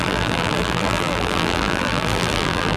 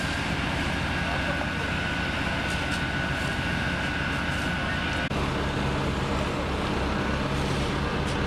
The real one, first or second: second